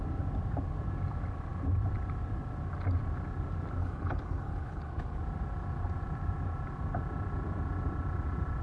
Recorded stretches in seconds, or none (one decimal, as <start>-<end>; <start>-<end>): 0.0-3.8; 5.2-8.6